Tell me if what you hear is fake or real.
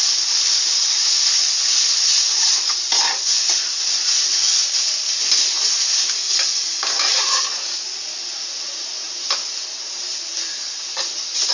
real